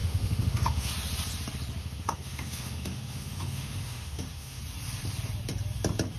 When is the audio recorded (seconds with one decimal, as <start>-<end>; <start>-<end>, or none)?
0.9-1.8; 4.6-6.2

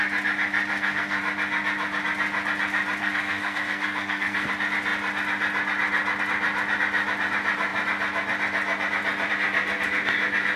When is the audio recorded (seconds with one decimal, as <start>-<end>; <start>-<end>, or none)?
0.0-0.7; 1.2-3.0; 4.5-10.6